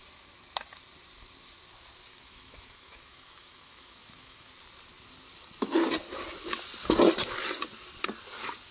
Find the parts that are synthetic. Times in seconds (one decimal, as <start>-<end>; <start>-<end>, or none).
2.1-4.5